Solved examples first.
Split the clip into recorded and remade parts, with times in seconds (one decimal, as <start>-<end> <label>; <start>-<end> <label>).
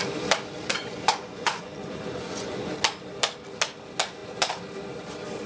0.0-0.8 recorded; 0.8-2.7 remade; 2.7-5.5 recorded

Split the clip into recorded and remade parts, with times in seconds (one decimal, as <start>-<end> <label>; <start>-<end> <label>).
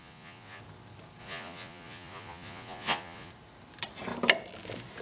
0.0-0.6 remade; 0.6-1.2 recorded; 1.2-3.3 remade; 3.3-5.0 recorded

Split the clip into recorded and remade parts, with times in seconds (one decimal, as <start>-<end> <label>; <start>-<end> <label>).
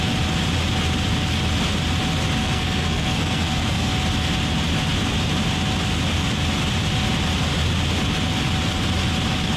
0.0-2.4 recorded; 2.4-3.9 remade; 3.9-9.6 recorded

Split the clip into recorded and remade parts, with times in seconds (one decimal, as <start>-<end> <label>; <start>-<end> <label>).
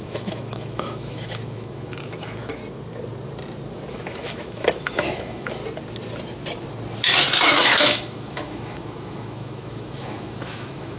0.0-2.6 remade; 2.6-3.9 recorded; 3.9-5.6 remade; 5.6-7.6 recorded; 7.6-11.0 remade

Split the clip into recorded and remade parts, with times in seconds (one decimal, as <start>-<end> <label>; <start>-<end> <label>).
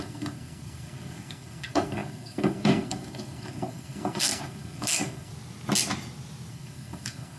0.0-5.3 remade; 5.3-6.5 recorded; 6.5-7.4 remade